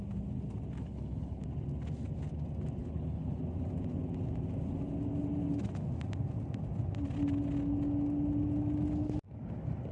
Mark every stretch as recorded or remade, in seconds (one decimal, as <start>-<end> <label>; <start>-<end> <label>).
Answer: 0.0-0.8 recorded; 0.8-1.4 remade; 1.4-2.8 recorded; 2.8-3.4 remade; 3.4-9.9 recorded

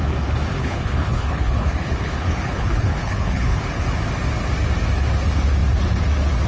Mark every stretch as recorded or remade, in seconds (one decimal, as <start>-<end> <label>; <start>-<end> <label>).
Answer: 0.0-0.6 recorded; 0.6-3.8 remade; 3.8-6.5 recorded

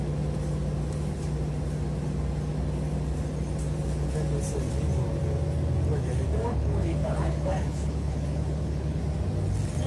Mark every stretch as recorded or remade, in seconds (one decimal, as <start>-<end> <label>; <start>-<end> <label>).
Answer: 0.0-6.5 recorded; 6.5-9.0 remade; 9.0-9.9 recorded

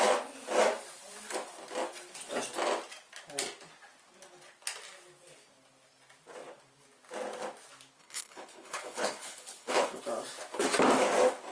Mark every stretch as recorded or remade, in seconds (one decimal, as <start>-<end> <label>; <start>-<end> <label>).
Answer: 0.0-8.0 recorded; 8.0-10.0 remade; 10.0-11.5 recorded

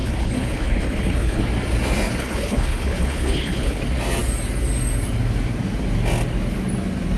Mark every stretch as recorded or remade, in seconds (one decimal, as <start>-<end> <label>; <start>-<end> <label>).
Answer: 0.0-1.4 remade; 1.4-2.2 recorded; 2.2-3.8 remade; 3.8-7.2 recorded

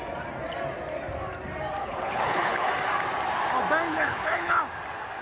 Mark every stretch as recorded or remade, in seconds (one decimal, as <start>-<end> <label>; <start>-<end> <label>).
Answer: 0.0-1.8 recorded; 1.8-2.7 remade; 2.7-3.9 recorded; 3.9-4.6 remade; 4.6-5.2 recorded

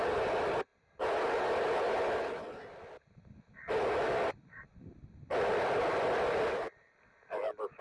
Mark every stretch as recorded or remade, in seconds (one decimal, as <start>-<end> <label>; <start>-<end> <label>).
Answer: 0.0-7.8 recorded

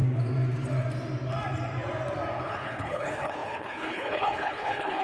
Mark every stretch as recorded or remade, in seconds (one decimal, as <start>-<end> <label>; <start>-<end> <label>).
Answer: 0.0-2.4 recorded; 2.4-5.0 remade